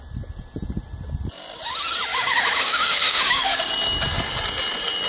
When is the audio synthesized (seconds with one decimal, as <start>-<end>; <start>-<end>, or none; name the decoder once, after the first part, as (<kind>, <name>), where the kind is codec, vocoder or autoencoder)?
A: 2.1-3.7 (codec, DAC)